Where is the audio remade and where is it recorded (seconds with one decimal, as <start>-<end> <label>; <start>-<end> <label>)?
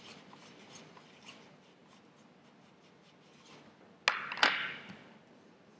0.0-1.8 remade; 1.8-5.3 recorded; 5.3-5.8 remade